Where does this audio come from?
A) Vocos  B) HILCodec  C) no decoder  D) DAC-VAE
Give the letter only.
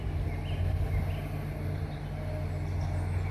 C